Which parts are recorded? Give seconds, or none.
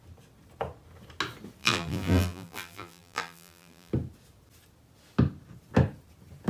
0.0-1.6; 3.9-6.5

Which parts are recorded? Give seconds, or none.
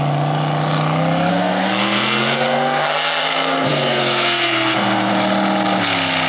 0.0-1.3; 5.1-6.3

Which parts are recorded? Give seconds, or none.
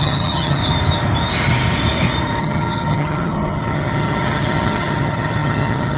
0.6-2.4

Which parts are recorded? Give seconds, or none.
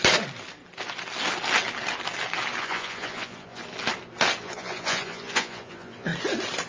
0.0-2.6; 3.6-4.4; 6.1-6.7